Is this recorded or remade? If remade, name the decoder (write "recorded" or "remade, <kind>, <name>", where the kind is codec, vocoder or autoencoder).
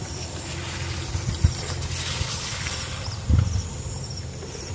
recorded